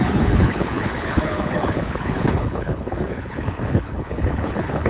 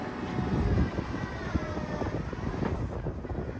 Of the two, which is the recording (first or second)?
second